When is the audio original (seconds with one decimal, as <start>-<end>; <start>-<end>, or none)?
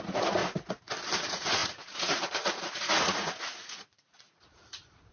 0.4-1.2